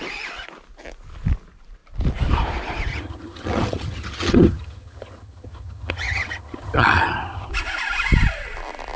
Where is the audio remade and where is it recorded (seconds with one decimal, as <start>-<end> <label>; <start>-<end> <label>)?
0.0-2.9 recorded; 2.9-7.5 remade; 7.5-9.0 recorded